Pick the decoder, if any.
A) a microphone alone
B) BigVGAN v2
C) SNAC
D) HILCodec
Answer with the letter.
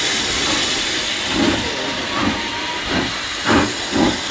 B